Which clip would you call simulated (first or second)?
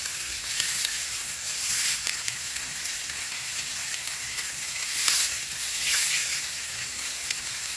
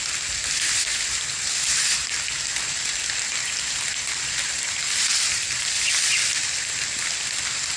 first